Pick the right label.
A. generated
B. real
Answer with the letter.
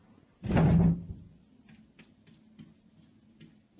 B